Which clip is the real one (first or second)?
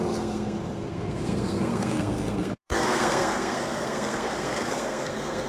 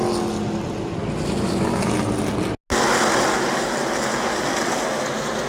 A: second